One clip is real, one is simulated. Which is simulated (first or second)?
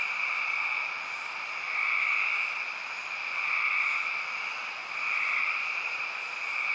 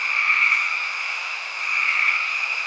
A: second